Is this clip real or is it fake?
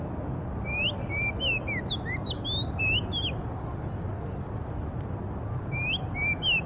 real